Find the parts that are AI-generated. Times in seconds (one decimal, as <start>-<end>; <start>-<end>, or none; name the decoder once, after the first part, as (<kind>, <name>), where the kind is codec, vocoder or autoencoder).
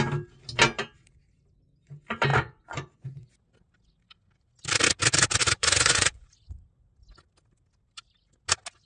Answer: 2.3-3.3 (vocoder, Vocos); 5.4-6.3